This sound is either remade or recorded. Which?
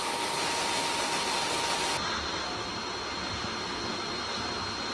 recorded